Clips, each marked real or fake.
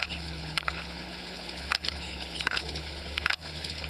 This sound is fake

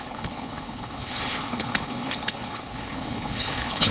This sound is fake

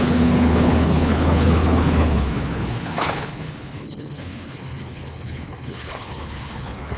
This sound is fake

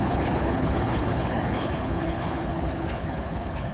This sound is fake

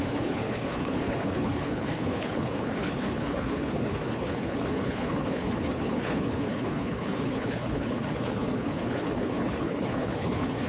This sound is fake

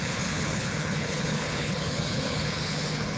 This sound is fake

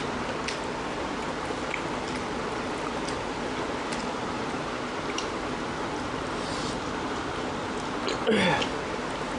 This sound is real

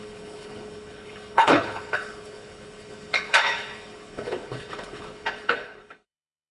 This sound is fake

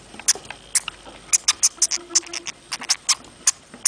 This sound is real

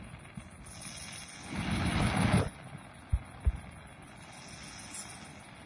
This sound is real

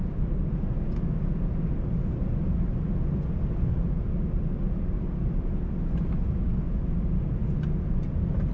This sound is real